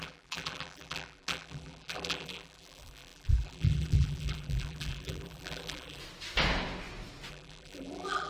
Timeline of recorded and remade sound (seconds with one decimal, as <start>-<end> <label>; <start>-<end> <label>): 0.0-6.0 remade; 6.0-7.3 recorded; 7.3-8.3 remade